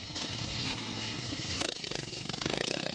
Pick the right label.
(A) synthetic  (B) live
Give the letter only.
A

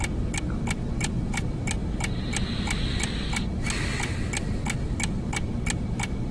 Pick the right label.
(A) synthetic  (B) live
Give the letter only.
B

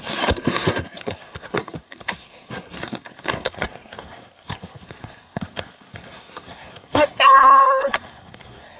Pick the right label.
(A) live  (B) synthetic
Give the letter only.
B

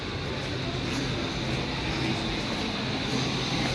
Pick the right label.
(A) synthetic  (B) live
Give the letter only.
B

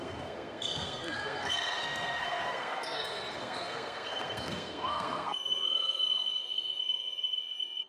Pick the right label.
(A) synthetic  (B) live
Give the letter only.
A